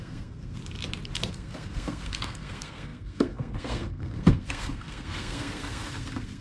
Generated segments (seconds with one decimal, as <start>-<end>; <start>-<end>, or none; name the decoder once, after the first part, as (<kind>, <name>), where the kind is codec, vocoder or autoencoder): 0.0-0.6 (codec, SNAC); 1.3-6.4